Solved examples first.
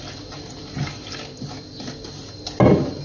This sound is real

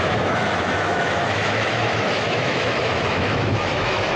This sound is fake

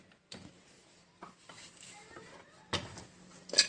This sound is real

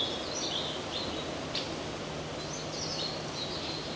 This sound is real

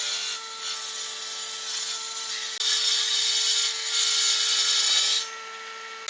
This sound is real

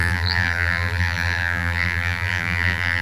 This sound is fake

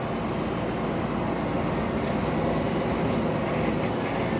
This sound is real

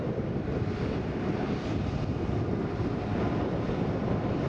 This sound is real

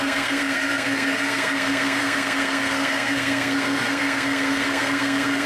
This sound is fake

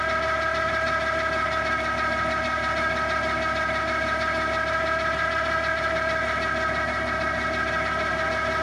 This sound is real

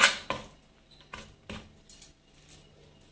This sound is real